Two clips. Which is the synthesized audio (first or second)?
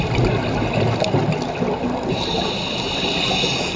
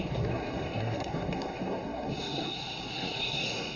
second